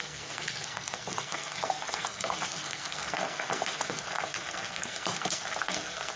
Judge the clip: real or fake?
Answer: fake